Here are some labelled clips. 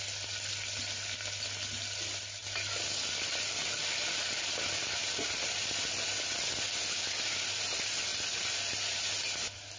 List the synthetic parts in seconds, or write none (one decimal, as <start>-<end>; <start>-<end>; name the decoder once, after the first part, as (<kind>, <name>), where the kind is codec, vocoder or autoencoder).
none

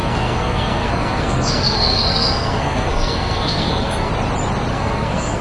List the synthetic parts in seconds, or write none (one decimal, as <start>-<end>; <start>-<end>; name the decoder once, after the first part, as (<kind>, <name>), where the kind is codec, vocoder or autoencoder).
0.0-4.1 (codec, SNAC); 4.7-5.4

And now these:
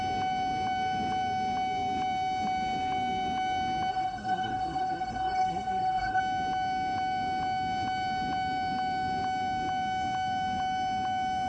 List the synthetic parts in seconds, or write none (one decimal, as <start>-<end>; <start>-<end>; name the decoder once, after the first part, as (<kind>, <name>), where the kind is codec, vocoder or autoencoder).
3.9-6.2 (codec, SNAC)

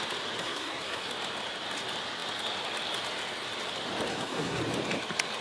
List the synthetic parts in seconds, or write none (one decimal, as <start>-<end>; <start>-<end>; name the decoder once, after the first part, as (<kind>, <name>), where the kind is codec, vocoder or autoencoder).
0.4-1.1 (codec, SNAC); 4.1-4.6

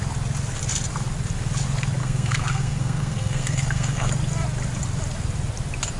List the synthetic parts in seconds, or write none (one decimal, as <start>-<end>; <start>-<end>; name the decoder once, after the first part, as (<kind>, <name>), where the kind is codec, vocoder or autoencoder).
2.0-4.1 (codec, SNAC)